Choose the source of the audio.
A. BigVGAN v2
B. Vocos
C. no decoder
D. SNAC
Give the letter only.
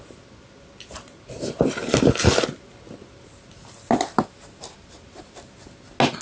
C